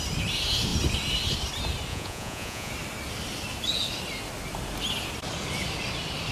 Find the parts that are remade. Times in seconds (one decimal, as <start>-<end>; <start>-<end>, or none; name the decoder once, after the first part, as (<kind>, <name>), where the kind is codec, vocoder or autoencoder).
1.9-2.7 (vocoder, Vocos)